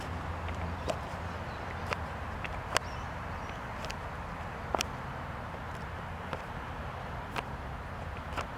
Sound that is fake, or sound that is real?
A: real